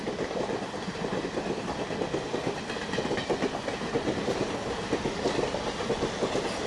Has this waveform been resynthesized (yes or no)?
no